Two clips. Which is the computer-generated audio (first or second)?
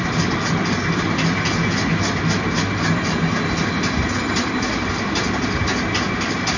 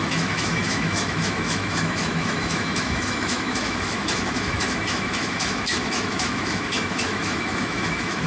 second